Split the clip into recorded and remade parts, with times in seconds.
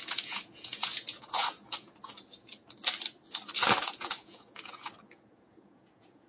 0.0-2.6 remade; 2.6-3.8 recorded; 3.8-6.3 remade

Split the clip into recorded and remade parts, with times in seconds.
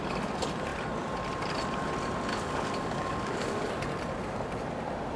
0.0-2.3 recorded; 2.3-3.7 remade; 3.7-5.2 recorded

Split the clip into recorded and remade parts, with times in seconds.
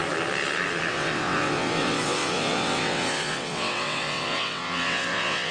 0.0-0.9 recorded; 0.9-5.5 remade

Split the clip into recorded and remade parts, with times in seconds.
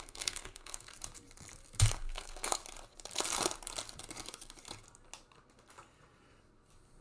0.0-0.9 remade; 0.9-1.9 recorded; 1.9-2.6 remade; 2.6-7.0 recorded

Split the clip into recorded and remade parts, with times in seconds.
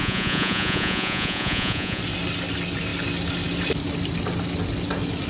0.0-2.0 remade; 2.0-5.3 recorded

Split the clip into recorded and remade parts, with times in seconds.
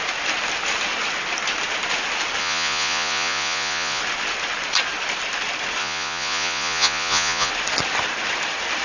0.0-2.4 recorded; 2.4-4.0 remade; 4.0-5.8 recorded; 5.8-7.5 remade; 7.5-8.8 recorded